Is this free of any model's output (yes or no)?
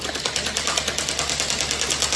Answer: yes